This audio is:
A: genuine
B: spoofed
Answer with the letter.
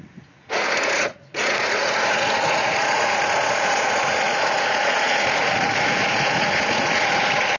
B